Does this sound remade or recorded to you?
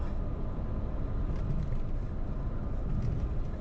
recorded